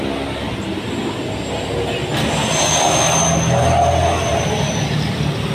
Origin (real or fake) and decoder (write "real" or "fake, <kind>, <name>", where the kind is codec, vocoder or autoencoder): real